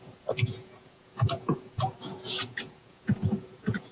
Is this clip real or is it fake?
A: fake